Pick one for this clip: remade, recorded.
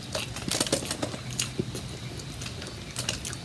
recorded